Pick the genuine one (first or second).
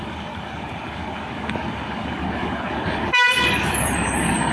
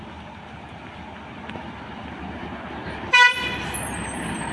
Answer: second